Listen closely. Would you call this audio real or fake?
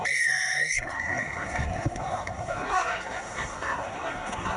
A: fake